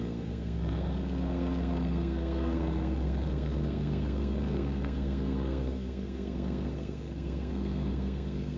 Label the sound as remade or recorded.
remade